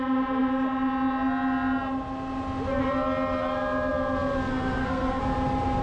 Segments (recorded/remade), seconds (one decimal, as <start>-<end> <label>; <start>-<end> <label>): 0.0-4.5 recorded; 4.5-5.2 remade; 5.2-5.8 recorded